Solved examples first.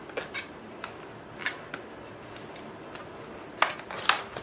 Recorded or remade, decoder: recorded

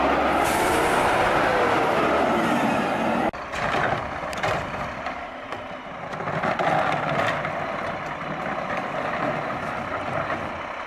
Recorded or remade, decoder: recorded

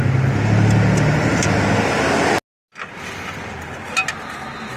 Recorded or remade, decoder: recorded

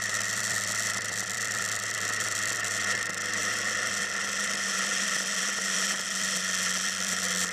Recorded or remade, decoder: remade, vocoder, BigVGAN v2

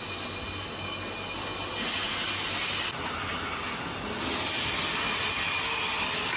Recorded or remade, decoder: recorded